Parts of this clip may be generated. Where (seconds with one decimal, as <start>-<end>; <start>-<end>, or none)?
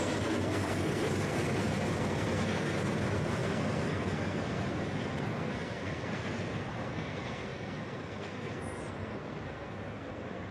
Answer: 0.0-10.5